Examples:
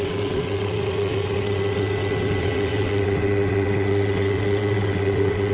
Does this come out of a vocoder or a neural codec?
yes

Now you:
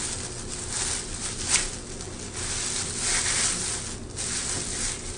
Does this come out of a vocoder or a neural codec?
no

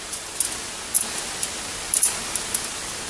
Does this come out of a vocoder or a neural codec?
no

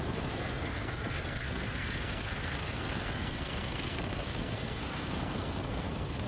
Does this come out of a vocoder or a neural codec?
yes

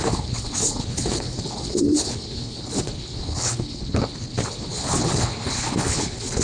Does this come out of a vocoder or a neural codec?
yes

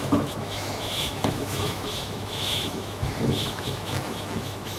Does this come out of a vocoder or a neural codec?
yes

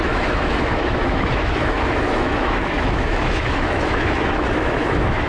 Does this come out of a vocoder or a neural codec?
yes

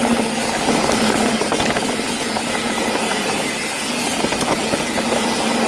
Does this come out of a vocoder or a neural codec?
no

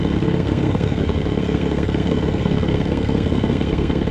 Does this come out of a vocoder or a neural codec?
yes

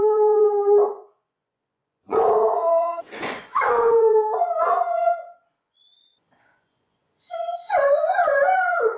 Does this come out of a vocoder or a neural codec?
yes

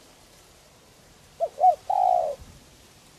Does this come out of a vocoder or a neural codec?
yes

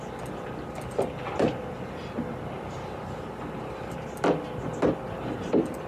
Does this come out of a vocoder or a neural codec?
no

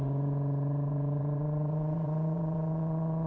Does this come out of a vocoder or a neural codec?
yes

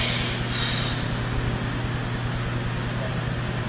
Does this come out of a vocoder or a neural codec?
no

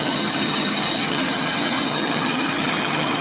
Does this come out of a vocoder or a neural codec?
yes